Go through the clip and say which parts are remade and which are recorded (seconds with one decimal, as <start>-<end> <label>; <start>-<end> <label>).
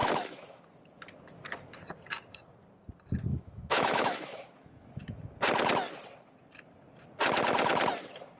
0.0-0.6 remade; 0.6-3.3 recorded; 3.3-5.2 remade; 5.2-8.4 recorded